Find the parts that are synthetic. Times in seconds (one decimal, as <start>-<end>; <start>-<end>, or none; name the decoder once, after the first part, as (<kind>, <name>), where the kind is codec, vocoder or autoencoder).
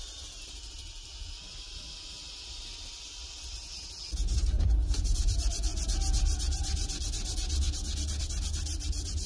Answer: none